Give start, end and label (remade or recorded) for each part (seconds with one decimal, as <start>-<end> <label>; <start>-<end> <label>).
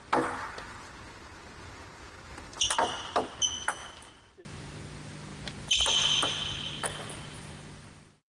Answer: 0.0-2.5 recorded; 2.5-3.4 remade; 3.4-3.8 recorded; 3.8-4.8 remade; 4.8-8.3 recorded